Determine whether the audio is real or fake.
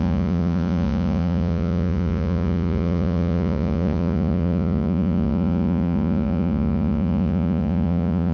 fake